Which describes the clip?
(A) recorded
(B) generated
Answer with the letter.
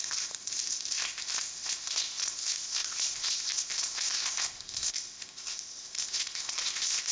B